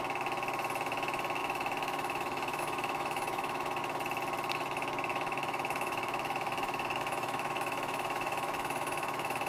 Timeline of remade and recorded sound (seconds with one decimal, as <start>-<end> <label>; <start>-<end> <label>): 0.0-1.4 recorded; 1.4-3.8 remade; 3.8-5.1 recorded; 5.1-9.5 remade